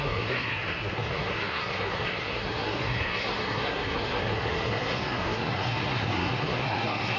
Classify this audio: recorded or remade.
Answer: remade